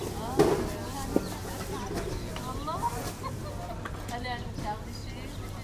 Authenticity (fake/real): real